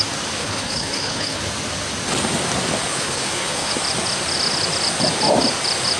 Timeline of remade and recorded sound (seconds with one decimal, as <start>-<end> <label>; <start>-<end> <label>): 0.0-0.4 recorded; 0.4-1.4 remade; 1.4-2.9 recorded; 2.9-3.7 remade; 3.7-6.0 recorded